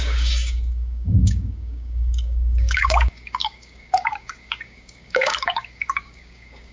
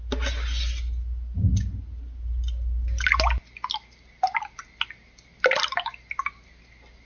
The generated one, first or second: first